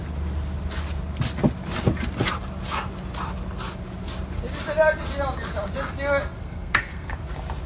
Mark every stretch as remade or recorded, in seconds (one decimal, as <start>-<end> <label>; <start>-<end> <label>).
0.0-6.4 recorded; 6.4-7.1 remade; 7.1-7.7 recorded